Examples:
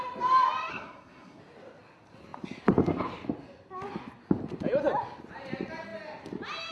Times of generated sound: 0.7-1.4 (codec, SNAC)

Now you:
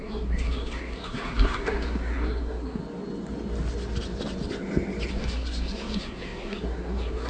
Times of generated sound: 0.0-2.8 (codec, SNAC); 5.1-7.3

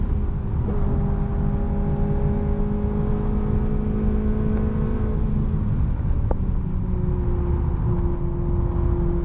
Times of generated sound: none